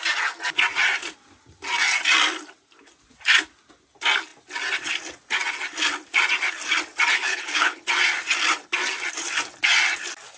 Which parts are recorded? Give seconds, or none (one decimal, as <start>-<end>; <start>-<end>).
0.0-7.1; 7.9-10.4